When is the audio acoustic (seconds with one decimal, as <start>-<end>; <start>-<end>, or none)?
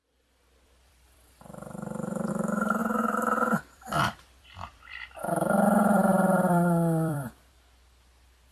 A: 2.3-2.8; 7.5-8.5